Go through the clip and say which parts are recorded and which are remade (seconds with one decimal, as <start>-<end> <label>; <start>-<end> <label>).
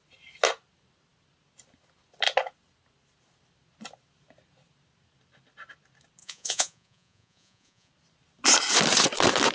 0.0-6.2 recorded; 6.2-7.9 remade; 7.9-9.5 recorded